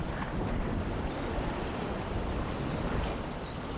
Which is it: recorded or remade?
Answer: recorded